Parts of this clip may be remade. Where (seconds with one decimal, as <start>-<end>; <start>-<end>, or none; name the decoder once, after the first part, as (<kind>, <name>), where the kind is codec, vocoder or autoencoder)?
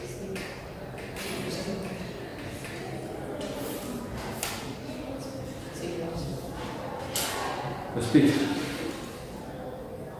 none